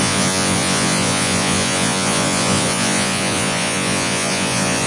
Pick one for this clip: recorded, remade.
remade